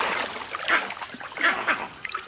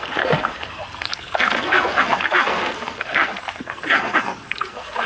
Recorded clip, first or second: first